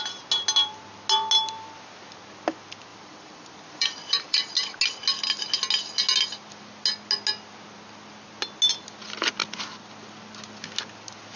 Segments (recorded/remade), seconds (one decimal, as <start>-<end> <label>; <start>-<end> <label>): 0.0-2.9 recorded; 2.9-4.5 remade; 4.5-11.4 recorded